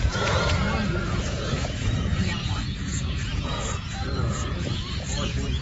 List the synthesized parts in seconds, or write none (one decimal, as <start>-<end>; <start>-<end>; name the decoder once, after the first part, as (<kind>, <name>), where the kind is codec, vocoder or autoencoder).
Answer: 0.0-0.6 (vocoder, Vocos); 1.2-5.6